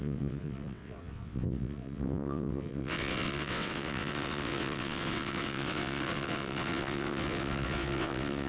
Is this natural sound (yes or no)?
no